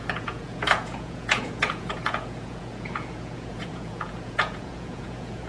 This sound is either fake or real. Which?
fake